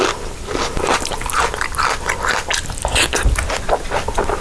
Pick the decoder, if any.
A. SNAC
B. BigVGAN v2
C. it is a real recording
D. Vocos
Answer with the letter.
C